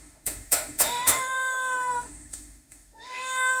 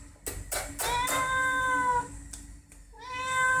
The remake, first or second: first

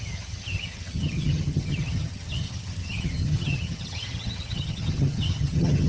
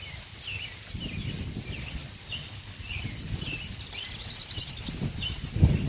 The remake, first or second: first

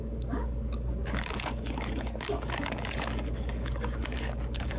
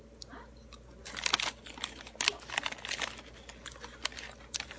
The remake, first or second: first